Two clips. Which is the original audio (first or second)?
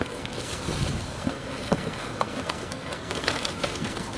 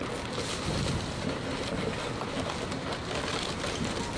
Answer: second